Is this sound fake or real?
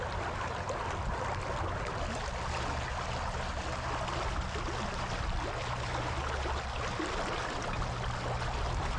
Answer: real